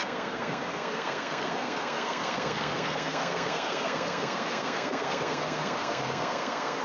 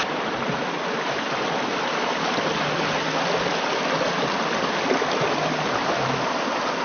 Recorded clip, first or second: second